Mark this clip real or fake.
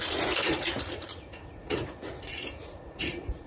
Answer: fake